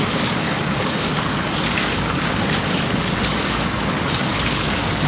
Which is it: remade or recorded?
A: remade